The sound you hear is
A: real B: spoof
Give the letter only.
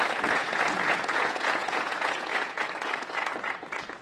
B